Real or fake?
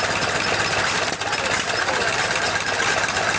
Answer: real